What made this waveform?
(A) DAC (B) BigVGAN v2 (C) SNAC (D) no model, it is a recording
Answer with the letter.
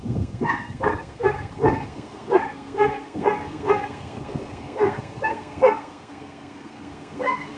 C